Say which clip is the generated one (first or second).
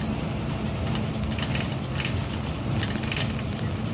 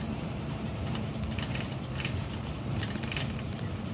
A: second